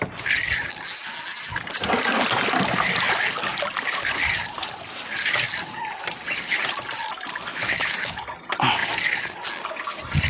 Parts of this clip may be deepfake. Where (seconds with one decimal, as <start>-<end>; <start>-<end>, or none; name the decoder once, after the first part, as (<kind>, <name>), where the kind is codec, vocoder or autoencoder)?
7.5-8.2 (autoencoder, DAC-VAE)